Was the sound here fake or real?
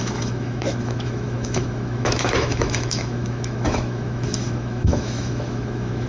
fake